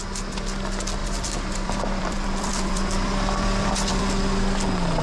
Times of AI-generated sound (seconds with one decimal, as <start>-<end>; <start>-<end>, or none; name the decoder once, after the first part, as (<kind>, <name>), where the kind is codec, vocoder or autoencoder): 1.0-4.0 (vocoder, BigVGAN v2)